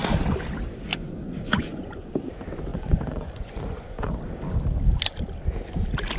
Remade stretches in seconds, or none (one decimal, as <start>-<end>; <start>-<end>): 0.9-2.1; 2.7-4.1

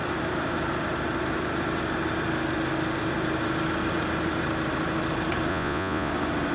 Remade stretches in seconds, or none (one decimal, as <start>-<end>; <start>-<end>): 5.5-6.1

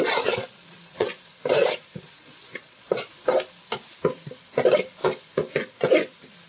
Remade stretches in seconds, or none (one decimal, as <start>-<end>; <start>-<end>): 0.6-1.2; 1.6-3.1